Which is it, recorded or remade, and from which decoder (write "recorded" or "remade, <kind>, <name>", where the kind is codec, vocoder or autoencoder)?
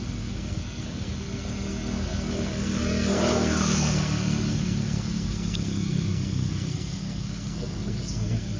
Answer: remade, codec, SNAC